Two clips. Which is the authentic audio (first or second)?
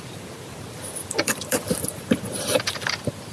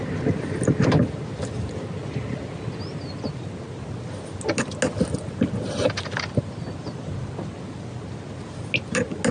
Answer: second